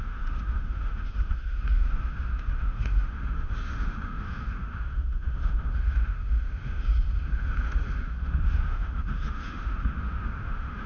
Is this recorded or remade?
remade